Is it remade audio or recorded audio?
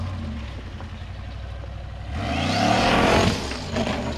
recorded